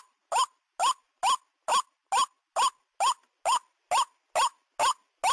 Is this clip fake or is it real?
real